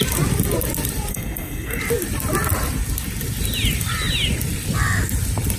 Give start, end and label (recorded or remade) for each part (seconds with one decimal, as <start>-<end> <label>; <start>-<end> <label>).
0.0-1.1 recorded; 1.1-1.8 remade; 1.8-5.6 recorded

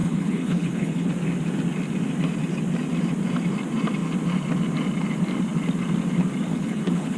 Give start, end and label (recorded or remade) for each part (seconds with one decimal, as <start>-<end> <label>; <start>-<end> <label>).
0.0-1.1 remade; 1.1-6.5 recorded; 6.5-7.2 remade

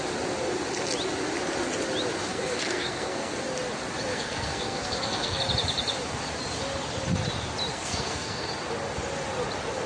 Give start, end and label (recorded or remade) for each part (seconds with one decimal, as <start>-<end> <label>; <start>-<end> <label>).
0.0-2.3 recorded; 2.3-3.4 remade; 3.4-4.1 recorded; 4.1-5.4 remade; 5.4-7.7 recorded; 7.7-8.5 remade; 8.5-9.9 recorded

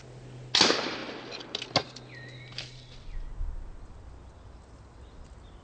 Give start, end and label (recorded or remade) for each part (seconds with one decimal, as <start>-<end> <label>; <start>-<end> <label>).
0.0-5.6 recorded